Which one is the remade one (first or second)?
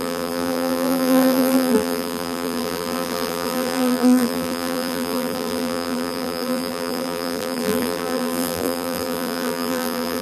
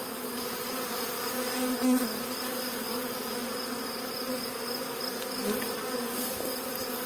first